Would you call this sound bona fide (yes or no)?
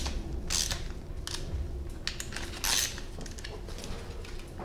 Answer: yes